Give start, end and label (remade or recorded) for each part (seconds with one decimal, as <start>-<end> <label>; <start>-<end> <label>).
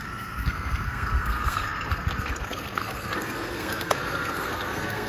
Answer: 0.0-5.1 remade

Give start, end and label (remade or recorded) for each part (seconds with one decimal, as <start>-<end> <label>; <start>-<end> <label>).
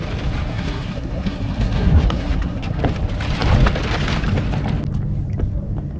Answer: 0.0-0.5 recorded; 0.5-2.8 remade; 2.8-6.0 recorded